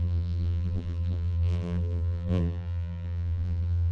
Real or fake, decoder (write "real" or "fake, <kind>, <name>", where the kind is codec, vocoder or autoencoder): fake, vocoder, BigVGAN v2